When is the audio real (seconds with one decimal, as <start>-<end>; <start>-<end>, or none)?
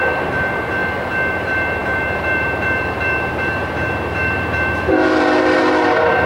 0.8-1.3